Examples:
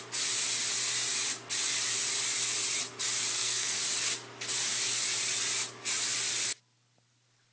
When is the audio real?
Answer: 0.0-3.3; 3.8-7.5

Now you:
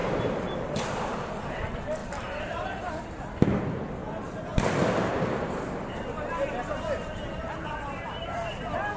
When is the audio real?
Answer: 0.8-2.0; 3.2-9.0